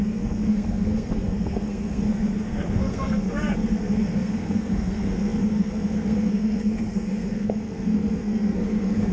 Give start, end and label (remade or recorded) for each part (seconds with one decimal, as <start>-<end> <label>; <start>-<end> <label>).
0.0-9.1 remade